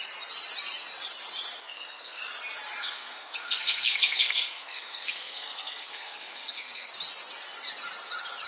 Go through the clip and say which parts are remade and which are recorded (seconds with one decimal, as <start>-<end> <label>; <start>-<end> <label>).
0.0-1.6 recorded; 1.6-2.2 remade; 2.2-2.8 recorded; 2.8-6.9 remade; 6.9-8.5 recorded